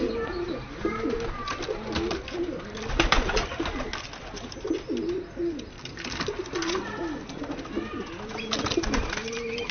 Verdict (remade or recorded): recorded